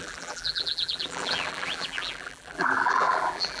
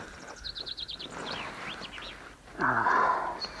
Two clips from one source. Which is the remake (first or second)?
first